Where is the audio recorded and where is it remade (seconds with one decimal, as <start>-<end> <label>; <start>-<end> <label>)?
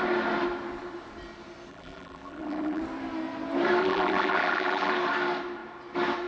0.0-1.7 recorded; 1.7-2.8 remade; 2.8-3.8 recorded; 3.8-4.9 remade; 4.9-6.3 recorded